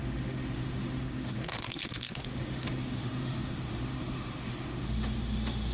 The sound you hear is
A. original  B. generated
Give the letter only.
B